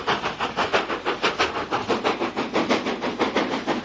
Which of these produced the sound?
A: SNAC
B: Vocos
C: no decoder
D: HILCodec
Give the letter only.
C